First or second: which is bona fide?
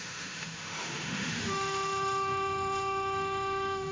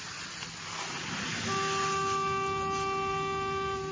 second